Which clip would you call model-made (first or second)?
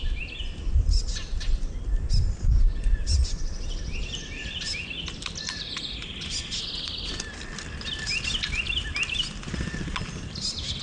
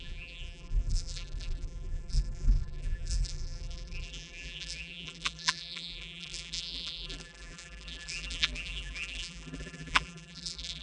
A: second